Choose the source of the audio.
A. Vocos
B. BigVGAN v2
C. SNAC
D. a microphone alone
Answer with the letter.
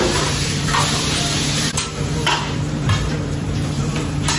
B